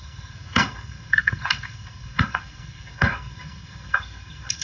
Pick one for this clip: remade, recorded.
remade